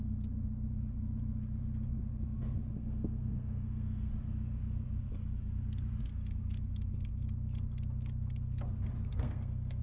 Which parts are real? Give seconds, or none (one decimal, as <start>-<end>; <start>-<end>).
0.0-2.8; 4.1-9.1